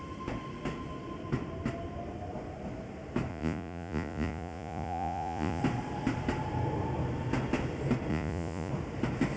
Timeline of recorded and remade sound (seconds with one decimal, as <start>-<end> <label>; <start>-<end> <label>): 0.0-3.3 recorded; 3.3-5.6 remade; 5.6-8.1 recorded; 8.1-8.7 remade; 8.7-9.4 recorded